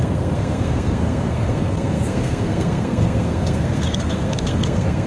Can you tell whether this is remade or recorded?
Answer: remade